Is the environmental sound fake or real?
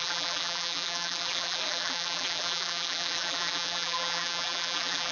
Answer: fake